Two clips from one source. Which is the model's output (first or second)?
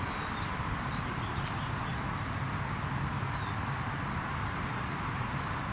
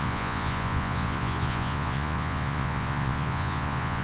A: second